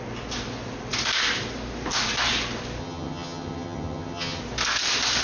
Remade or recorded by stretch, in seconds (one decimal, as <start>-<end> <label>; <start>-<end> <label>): 0.0-2.8 recorded; 2.8-4.4 remade; 4.4-5.2 recorded